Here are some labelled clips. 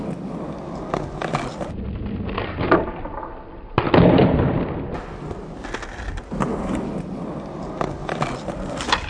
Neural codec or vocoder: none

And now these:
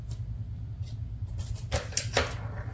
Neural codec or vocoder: none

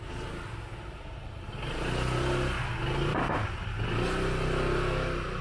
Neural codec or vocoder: none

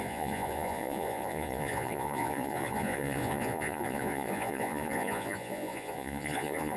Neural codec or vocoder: vocoder, Vocos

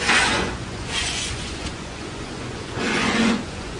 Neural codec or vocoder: vocoder, Vocos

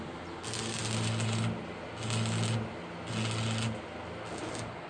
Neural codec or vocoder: none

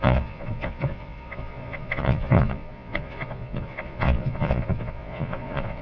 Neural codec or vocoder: vocoder, Vocos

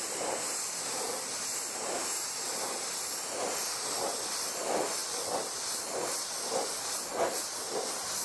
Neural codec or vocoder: none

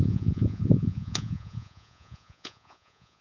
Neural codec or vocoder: vocoder, Vocos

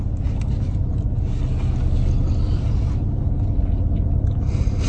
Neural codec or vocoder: none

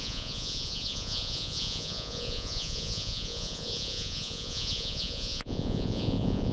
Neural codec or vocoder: vocoder, Vocos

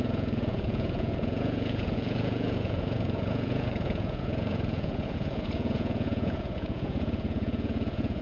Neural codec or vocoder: vocoder, Vocos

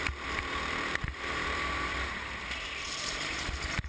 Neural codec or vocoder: none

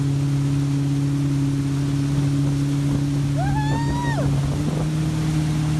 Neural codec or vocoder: none